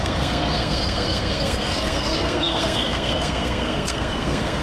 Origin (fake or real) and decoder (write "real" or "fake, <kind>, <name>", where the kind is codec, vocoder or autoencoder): fake, codec, SNAC